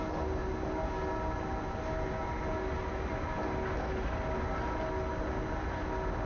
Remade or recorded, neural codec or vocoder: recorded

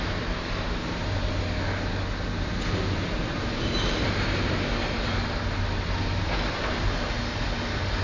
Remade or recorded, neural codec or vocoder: recorded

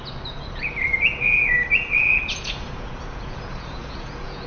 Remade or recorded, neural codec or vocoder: remade, vocoder, Vocos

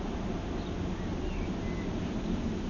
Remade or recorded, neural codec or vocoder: recorded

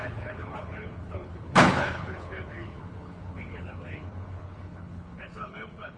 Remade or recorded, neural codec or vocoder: remade, codec, HILCodec